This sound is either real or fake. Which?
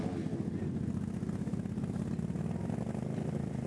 real